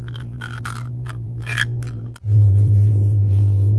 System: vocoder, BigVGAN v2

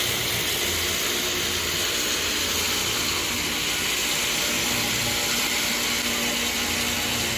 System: none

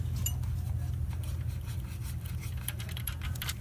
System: none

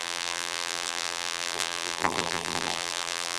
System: vocoder, BigVGAN v2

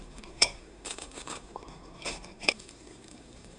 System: codec, SNAC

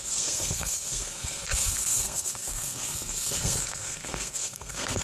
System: codec, SNAC